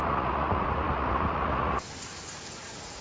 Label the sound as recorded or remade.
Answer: remade